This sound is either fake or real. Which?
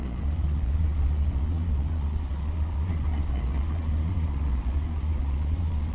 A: fake